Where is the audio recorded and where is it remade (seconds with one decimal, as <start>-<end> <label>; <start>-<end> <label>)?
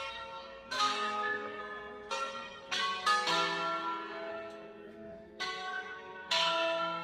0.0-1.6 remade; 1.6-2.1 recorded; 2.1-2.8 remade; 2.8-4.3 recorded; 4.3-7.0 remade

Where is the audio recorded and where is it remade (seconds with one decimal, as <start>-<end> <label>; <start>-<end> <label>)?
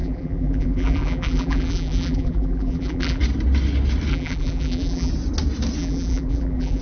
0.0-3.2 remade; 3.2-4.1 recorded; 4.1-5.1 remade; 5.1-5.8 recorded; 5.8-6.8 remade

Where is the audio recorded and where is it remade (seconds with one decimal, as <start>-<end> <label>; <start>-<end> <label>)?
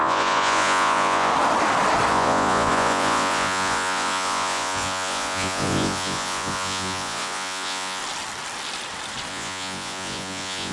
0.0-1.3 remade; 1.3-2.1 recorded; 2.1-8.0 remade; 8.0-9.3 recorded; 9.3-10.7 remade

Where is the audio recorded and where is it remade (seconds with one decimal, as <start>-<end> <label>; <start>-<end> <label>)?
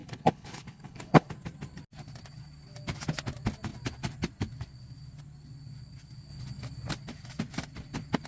0.0-1.3 remade; 1.3-8.3 recorded